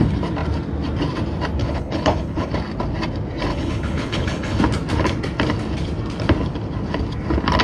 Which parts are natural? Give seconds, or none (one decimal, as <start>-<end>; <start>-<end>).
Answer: 0.0-1.6; 2.5-3.5; 4.6-7.6